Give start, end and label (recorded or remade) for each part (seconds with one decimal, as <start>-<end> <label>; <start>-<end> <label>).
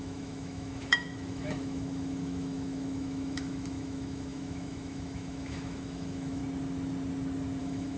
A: 0.0-6.4 remade; 6.4-7.6 recorded; 7.6-8.0 remade